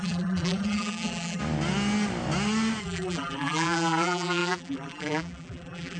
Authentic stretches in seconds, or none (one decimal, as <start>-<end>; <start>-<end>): 1.4-2.8